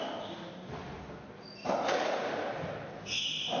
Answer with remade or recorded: recorded